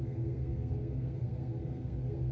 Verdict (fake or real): fake